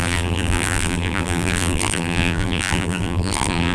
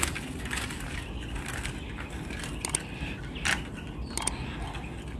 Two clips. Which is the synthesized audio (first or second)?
first